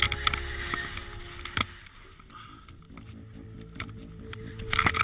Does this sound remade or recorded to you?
recorded